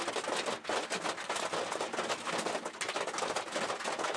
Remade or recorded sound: recorded